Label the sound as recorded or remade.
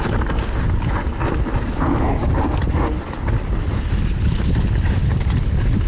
recorded